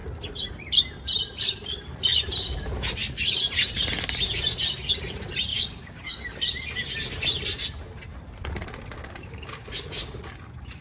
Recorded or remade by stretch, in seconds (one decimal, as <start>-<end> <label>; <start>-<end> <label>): 0.0-5.5 recorded; 5.5-6.2 remade; 6.2-9.0 recorded; 9.0-9.6 remade; 9.6-10.8 recorded